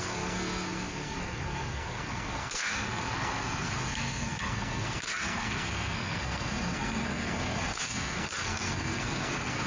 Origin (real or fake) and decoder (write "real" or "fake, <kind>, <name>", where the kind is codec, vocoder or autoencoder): fake, codec, SNAC